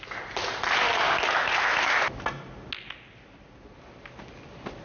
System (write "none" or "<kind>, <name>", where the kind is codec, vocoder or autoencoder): none